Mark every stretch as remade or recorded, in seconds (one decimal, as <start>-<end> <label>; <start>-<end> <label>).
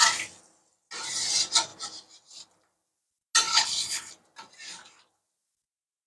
0.0-3.5 recorded; 3.5-4.1 remade; 4.1-6.1 recorded